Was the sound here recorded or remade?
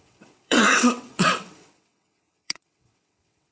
remade